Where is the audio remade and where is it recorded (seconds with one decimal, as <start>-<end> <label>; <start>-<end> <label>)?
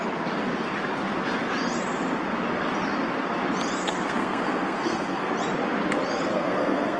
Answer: 0.0-3.8 recorded; 3.8-5.3 remade; 5.3-6.3 recorded; 6.3-7.0 remade